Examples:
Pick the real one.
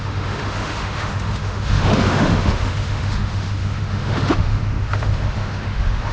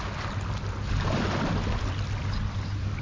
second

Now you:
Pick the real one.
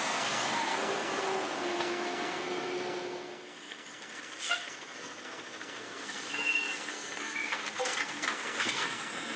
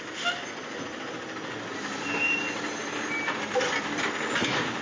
second